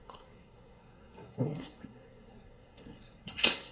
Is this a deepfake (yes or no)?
yes